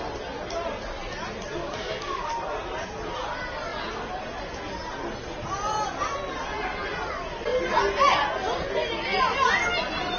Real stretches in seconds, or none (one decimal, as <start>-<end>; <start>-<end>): 0.0-1.6; 2.3-10.2